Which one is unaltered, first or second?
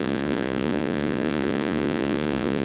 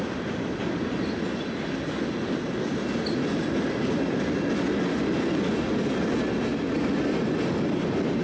second